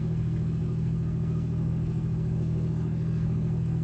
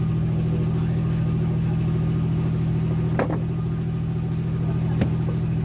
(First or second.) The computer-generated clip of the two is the first